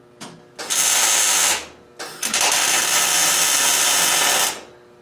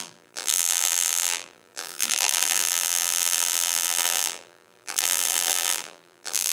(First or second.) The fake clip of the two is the second